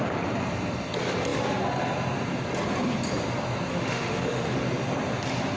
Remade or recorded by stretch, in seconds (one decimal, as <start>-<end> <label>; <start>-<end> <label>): 0.0-3.7 recorded; 3.7-4.6 remade; 4.6-5.6 recorded